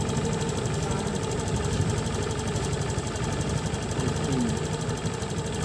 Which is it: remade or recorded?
recorded